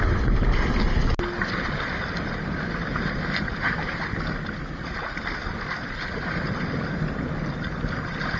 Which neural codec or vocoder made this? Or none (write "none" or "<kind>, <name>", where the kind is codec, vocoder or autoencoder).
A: none